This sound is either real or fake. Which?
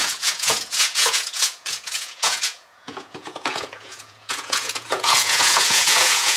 fake